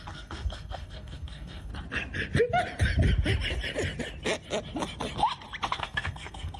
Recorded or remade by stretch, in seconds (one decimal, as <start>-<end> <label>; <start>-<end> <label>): 0.0-1.7 remade; 1.7-5.7 recorded; 5.7-6.6 remade